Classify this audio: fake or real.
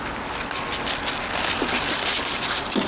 real